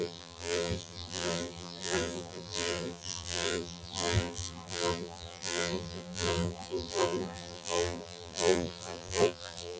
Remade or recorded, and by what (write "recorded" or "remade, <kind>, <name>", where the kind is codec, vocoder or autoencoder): remade, vocoder, BigVGAN v2